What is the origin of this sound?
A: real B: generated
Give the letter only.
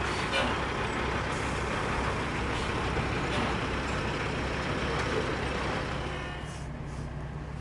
A